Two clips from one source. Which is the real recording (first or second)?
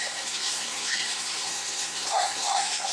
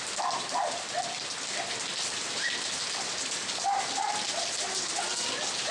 second